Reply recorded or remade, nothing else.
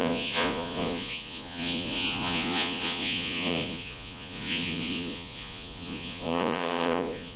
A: remade